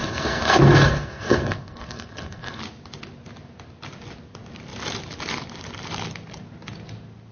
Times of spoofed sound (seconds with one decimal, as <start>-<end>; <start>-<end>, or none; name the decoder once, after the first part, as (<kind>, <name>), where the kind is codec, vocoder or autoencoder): 0.0-2.6 (codec, SNAC)